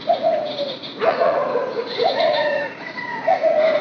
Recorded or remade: remade